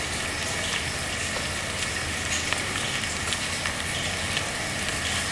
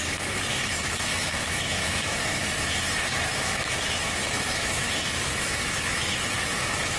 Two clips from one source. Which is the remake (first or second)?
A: second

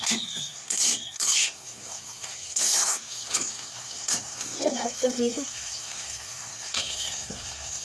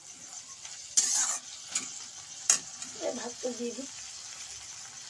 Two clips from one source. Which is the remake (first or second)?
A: first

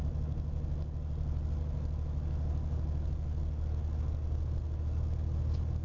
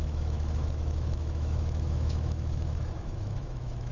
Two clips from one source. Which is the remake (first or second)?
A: second